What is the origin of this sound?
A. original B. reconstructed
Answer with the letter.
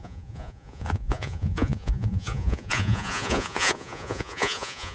B